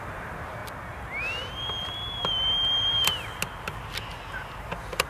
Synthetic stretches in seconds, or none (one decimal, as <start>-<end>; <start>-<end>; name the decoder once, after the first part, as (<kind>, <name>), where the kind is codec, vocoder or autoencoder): 0.0-0.6 (vocoder, BigVGAN v2); 1.5-3.1; 4.3-5.1